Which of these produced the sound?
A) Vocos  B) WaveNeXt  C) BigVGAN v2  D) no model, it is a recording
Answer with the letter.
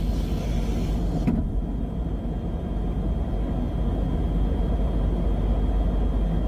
D